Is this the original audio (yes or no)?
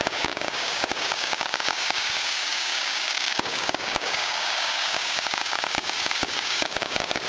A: no